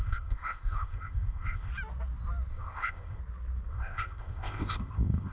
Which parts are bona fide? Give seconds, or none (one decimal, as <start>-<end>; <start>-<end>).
1.7-2.5; 3.2-3.7